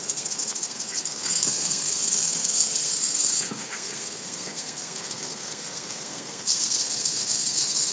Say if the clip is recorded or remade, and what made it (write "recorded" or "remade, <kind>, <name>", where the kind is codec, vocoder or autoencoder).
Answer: remade, codec, SNAC